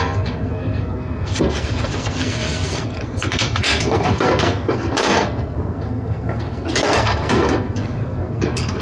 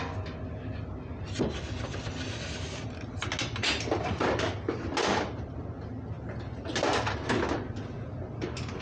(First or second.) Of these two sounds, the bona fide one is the second